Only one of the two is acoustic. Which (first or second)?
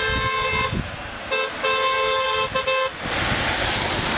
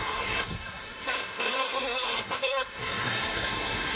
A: first